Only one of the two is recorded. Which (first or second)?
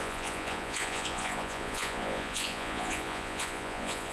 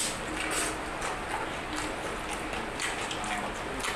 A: second